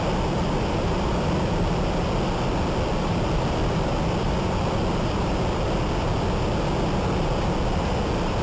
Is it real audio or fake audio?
real